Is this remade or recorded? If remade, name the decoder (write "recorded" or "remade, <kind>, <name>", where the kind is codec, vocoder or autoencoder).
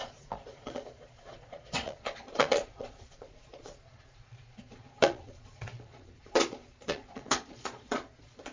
remade, vocoder, Vocos